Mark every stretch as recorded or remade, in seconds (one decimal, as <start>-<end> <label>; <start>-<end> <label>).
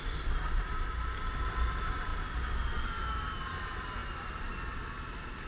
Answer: 0.0-5.5 recorded